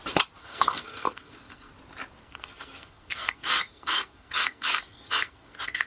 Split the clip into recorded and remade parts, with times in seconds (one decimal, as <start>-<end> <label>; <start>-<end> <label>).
0.0-0.4 recorded; 0.4-1.7 remade; 1.7-2.2 recorded; 2.2-5.9 remade